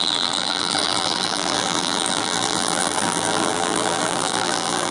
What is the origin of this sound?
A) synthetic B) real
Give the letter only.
A